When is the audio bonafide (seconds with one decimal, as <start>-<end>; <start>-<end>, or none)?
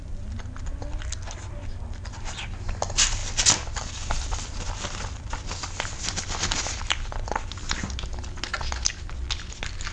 0.0-9.9